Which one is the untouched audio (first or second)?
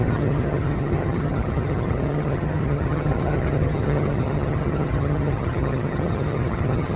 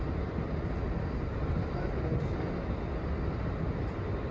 second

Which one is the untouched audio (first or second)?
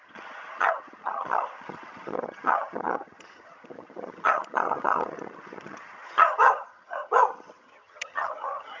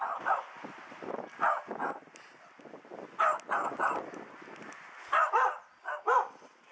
second